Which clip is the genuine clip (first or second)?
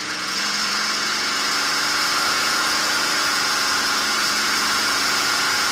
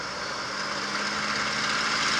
second